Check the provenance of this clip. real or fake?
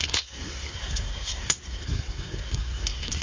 fake